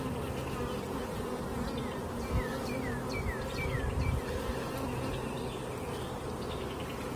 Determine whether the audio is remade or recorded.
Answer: recorded